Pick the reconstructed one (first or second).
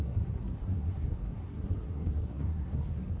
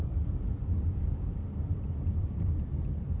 first